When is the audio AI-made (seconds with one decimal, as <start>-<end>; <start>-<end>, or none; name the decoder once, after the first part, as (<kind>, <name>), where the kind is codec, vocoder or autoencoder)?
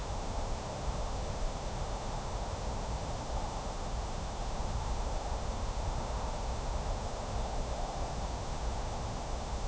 0.0-9.7 (autoencoder, DAC-VAE)